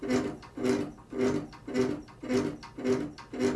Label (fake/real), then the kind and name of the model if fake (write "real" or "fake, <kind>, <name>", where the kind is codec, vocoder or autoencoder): real